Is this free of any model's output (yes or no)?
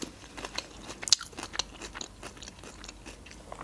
yes